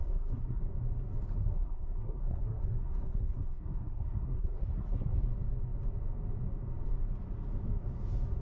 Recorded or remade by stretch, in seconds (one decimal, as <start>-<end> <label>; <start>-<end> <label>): 0.0-0.6 remade; 0.6-1.4 recorded; 1.4-5.3 remade; 5.3-8.4 recorded

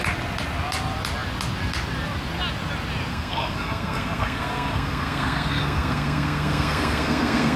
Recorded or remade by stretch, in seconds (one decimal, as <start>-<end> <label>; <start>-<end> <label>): 0.0-3.1 recorded; 3.1-7.6 remade

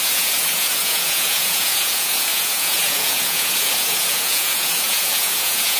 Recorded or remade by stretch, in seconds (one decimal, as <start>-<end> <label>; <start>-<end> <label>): 0.0-5.8 remade

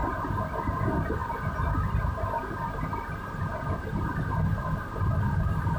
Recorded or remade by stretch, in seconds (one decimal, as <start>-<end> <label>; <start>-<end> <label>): 0.0-5.8 recorded

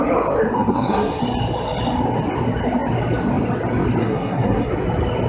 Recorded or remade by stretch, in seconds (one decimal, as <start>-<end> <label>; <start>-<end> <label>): 0.0-0.5 recorded; 0.5-1.2 remade; 1.2-4.0 recorded; 4.0-4.7 remade; 4.7-5.3 recorded

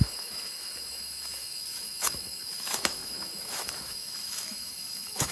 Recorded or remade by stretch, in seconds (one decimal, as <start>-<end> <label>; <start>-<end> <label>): 0.0-5.3 remade

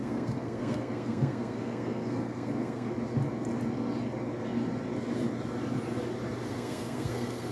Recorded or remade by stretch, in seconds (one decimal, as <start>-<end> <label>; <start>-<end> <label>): 0.0-2.9 remade; 2.9-6.5 recorded; 6.5-7.5 remade